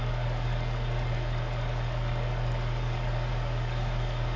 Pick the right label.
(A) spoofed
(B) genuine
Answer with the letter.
A